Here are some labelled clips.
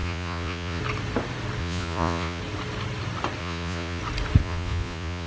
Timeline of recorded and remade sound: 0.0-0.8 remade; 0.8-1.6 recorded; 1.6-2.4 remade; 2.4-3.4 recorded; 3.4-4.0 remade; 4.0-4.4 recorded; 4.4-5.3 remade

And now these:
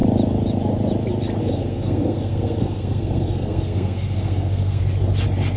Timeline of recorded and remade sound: 0.0-1.4 recorded; 1.4-4.8 remade; 4.8-5.6 recorded

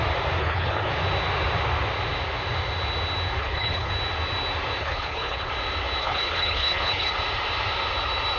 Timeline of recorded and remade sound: 0.0-0.4 recorded; 0.4-0.9 remade; 0.9-3.4 recorded; 3.4-3.9 remade; 3.9-4.8 recorded; 4.8-5.5 remade; 5.5-6.0 recorded; 6.0-7.1 remade; 7.1-8.4 recorded

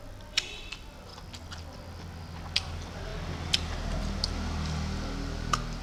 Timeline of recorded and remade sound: 0.0-5.8 recorded

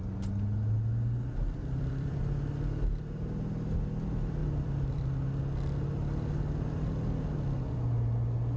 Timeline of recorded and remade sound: 0.0-1.6 recorded; 1.6-2.2 remade; 2.2-4.4 recorded; 4.4-5.0 remade; 5.0-8.6 recorded

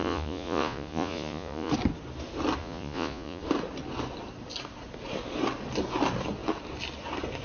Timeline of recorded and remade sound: 0.0-1.7 remade; 1.7-2.6 recorded; 2.6-3.4 remade; 3.4-7.4 recorded